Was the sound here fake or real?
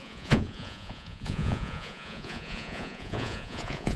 fake